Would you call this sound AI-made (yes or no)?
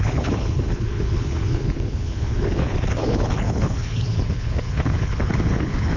yes